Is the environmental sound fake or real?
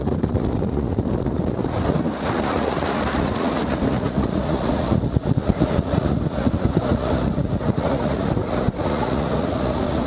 fake